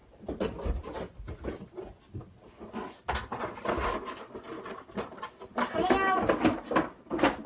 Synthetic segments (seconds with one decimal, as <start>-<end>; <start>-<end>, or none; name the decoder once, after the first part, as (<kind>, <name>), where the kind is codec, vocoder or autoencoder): none